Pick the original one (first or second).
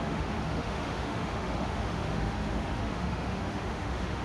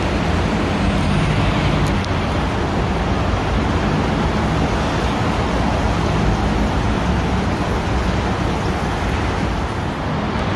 second